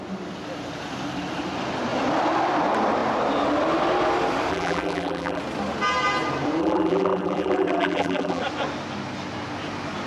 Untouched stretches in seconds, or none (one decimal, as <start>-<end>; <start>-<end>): 0.0-4.5; 5.4-6.6; 8.4-10.1